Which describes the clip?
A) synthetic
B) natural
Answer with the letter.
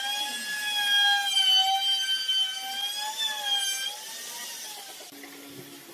B